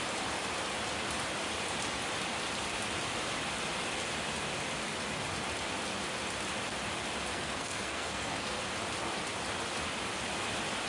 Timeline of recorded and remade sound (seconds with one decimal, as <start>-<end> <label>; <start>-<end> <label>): 0.0-7.3 recorded; 7.3-8.6 remade; 8.6-10.9 recorded